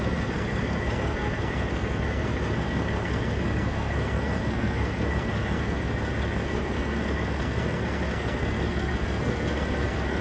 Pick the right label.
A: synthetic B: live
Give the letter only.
A